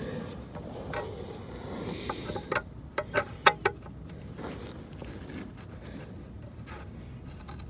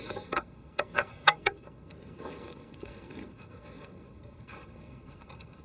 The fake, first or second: second